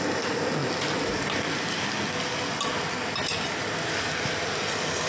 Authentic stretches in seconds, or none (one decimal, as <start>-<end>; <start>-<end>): 0.0-5.1